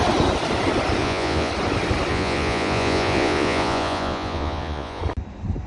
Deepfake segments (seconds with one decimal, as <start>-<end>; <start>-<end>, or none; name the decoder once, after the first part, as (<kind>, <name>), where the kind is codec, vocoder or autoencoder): 1.0-1.5 (vocoder, Vocos); 2.1-5.0